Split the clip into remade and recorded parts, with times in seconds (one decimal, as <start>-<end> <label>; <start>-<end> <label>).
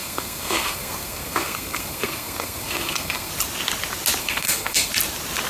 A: 0.0-3.3 remade; 3.3-4.2 recorded; 4.2-4.9 remade; 4.9-5.5 recorded